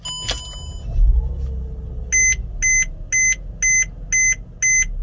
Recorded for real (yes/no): yes